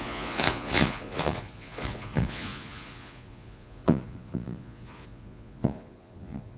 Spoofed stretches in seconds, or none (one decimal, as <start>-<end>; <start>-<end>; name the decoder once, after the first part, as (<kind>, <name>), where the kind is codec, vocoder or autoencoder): 0.0-6.6 (vocoder, Vocos)